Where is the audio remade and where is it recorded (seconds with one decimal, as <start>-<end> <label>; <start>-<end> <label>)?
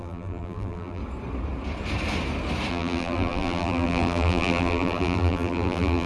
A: 0.0-1.0 remade; 1.0-2.7 recorded; 2.7-6.1 remade